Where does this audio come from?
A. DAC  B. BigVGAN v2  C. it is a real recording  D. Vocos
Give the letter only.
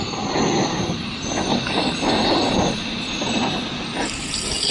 C